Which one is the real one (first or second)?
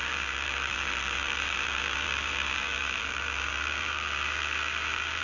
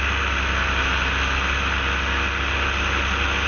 second